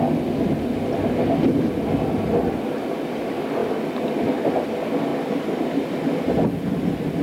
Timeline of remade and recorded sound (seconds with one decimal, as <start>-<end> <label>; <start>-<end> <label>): 0.0-7.2 recorded